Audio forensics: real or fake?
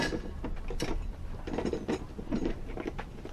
real